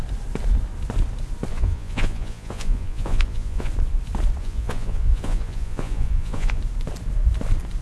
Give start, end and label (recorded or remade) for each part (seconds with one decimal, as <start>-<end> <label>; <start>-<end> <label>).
0.0-1.5 recorded; 1.5-3.7 remade; 3.7-4.4 recorded; 4.4-6.6 remade; 6.6-7.8 recorded